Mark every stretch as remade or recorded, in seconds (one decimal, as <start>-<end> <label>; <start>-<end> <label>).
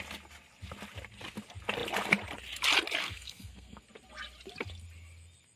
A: 0.0-3.0 recorded; 3.0-3.8 remade; 3.8-5.6 recorded